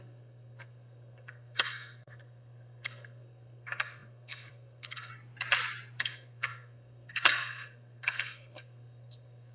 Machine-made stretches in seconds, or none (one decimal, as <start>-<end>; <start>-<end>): 0.0-5.1; 6.0-9.5